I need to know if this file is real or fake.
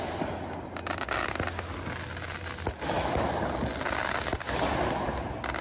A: real